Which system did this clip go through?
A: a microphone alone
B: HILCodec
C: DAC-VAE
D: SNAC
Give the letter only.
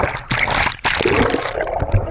A